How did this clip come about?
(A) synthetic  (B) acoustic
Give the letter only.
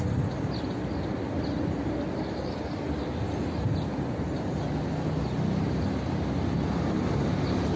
B